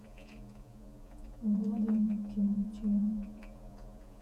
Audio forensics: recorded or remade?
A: remade